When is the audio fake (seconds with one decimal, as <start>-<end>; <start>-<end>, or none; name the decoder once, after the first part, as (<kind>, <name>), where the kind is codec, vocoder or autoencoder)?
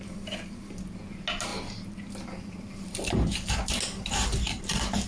none